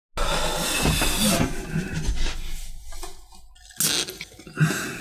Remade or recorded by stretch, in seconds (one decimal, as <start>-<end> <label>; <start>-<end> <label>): 0.0-5.0 recorded